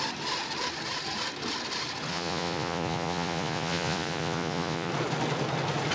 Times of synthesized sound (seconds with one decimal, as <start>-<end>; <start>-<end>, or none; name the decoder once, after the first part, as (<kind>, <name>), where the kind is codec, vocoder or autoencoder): 2.1-4.9 (vocoder, Vocos)